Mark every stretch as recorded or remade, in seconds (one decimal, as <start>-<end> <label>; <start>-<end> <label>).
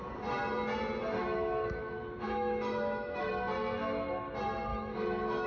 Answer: 0.0-1.2 recorded; 1.2-3.3 remade; 3.3-4.7 recorded; 4.7-5.5 remade